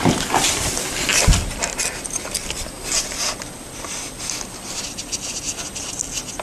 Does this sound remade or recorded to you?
recorded